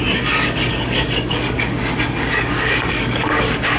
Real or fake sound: fake